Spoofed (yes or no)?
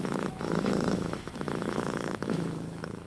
yes